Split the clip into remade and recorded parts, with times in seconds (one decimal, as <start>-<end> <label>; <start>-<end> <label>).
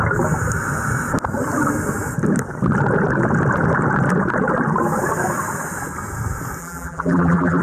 0.0-6.6 recorded; 6.6-7.6 remade